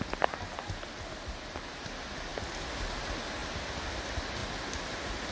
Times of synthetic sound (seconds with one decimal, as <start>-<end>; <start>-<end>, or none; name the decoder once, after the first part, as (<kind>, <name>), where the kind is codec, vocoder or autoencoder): none